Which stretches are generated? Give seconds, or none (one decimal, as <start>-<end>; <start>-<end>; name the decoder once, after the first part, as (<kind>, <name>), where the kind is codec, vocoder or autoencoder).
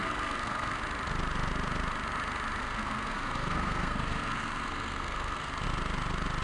0.0-0.8 (codec, SNAC); 2.6-5.5